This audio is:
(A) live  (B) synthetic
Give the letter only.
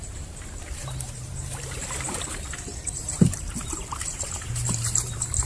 B